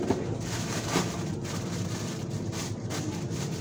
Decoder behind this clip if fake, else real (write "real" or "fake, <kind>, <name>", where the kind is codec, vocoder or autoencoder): real